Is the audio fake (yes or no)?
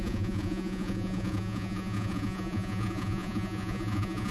yes